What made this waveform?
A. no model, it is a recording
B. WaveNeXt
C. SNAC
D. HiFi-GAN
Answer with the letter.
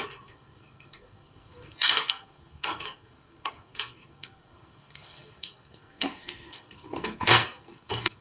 C